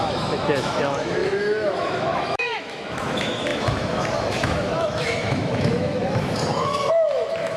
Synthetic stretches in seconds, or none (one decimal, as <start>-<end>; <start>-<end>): 0.0-7.6